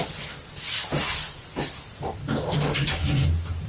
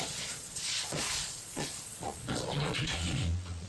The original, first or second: first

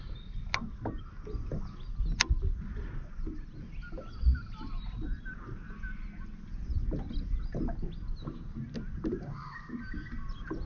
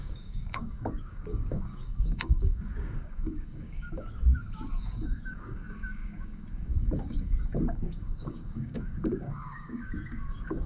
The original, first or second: first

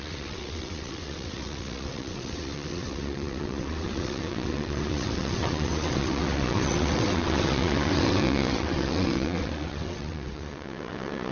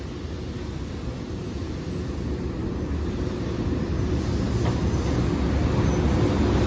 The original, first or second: second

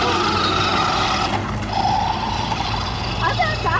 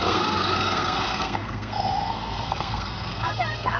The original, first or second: first